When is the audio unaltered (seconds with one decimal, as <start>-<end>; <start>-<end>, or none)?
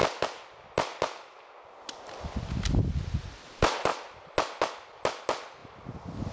0.0-6.3